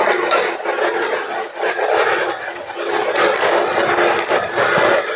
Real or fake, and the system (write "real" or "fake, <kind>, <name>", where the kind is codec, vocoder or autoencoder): real